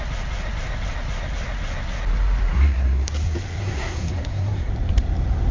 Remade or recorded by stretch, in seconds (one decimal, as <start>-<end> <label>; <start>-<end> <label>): 0.0-2.5 recorded; 2.5-3.1 remade; 3.1-3.6 recorded; 3.6-4.7 remade; 4.7-5.5 recorded